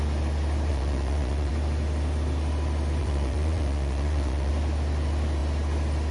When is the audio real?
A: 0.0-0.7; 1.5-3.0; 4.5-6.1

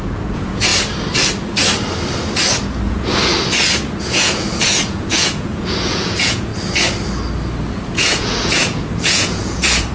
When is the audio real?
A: 0.7-2.8; 3.3-4.0; 6.5-7.7

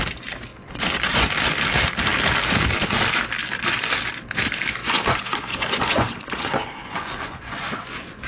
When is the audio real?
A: 0.0-0.5; 1.3-4.8